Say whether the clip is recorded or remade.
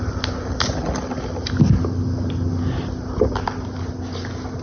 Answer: recorded